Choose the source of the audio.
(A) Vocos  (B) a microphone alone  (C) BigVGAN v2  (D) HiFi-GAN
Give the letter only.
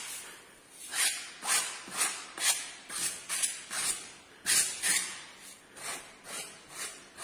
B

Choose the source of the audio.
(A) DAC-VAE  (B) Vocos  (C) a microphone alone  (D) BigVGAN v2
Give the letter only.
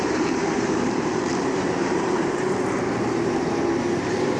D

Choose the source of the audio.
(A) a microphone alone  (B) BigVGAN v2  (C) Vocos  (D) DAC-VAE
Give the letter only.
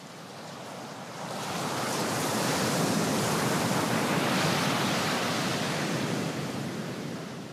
A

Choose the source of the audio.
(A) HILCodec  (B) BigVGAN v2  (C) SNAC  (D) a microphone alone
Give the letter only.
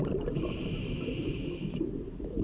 B